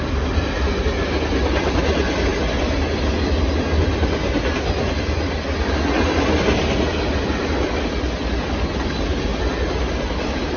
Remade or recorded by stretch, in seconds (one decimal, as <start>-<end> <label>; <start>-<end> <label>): 0.0-10.6 recorded